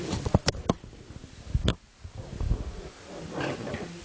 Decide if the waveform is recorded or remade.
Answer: recorded